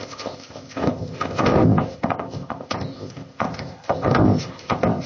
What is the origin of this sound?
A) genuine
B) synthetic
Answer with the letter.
B